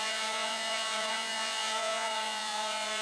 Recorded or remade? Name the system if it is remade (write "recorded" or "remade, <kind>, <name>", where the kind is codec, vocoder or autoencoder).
remade, vocoder, Vocos